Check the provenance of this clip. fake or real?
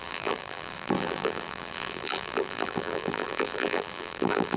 fake